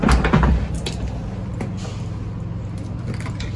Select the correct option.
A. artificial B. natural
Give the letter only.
B